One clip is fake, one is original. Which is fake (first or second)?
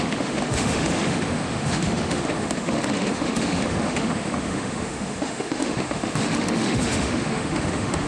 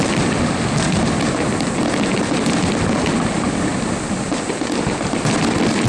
first